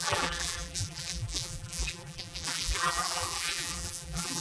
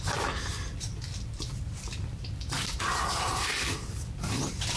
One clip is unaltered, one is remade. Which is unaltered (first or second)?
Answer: second